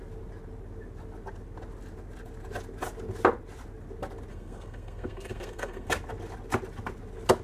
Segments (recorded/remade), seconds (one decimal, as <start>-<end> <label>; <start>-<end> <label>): 0.0-4.3 recorded; 4.3-5.9 remade; 5.9-7.4 recorded